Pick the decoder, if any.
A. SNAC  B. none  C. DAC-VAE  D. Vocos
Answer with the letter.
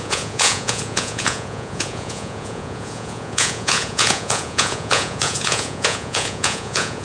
D